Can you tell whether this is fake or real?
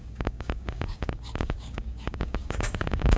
fake